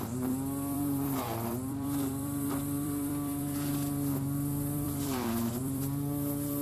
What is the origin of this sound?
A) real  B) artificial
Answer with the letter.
B